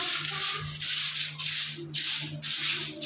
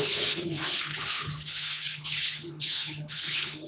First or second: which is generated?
second